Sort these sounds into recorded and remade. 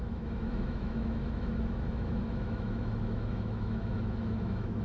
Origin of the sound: remade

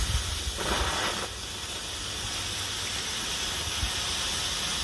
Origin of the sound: recorded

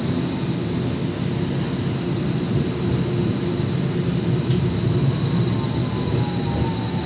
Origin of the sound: recorded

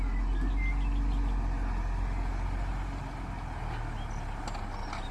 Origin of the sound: recorded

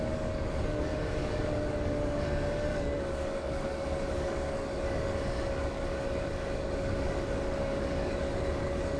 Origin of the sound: remade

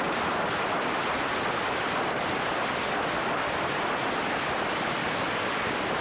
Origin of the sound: recorded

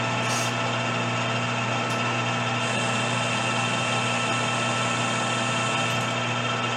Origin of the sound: recorded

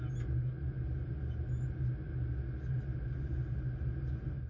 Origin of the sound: recorded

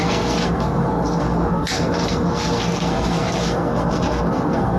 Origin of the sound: remade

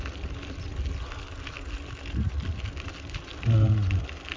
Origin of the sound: recorded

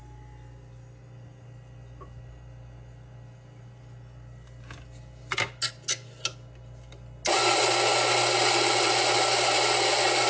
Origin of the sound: recorded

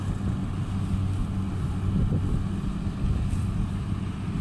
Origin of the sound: recorded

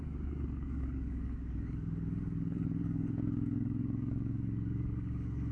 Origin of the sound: remade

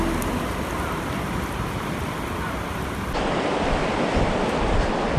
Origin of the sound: recorded